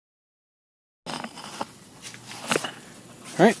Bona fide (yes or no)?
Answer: yes